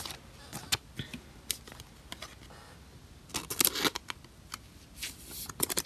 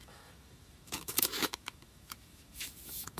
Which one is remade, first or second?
second